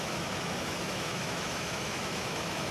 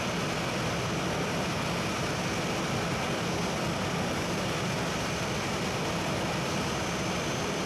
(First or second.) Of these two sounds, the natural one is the second